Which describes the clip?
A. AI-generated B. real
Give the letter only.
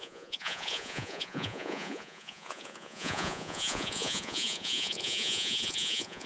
A